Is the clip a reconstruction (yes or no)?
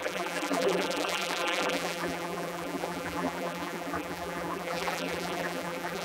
yes